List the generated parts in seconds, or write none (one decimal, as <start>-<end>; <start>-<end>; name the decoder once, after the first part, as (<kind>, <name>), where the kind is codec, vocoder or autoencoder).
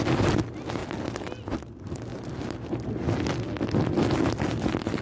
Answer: none